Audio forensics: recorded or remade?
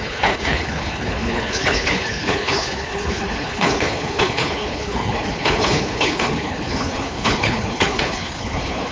remade